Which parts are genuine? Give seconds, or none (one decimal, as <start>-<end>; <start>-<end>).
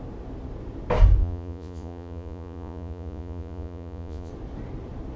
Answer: 0.0-1.2; 4.3-5.2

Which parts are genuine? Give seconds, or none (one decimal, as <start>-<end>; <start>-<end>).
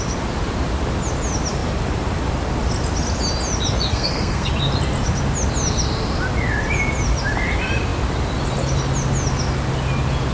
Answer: 0.0-3.9; 4.5-10.3